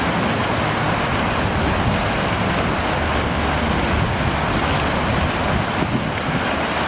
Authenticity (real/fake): real